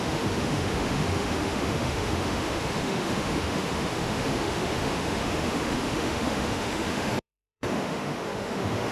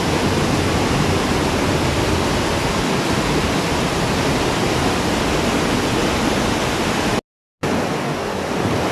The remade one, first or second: first